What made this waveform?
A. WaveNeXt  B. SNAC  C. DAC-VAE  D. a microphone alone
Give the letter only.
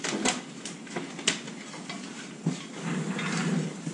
D